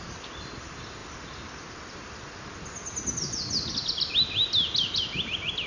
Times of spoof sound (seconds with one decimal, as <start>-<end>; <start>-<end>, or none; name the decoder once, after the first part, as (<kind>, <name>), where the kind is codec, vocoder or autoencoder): none